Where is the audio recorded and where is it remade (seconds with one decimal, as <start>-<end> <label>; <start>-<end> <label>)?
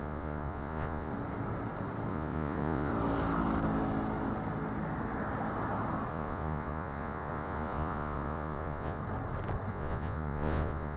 0.0-1.1 remade; 1.1-2.1 recorded; 2.1-2.9 remade; 2.9-6.1 recorded; 6.1-9.0 remade; 9.0-9.7 recorded; 9.7-11.0 remade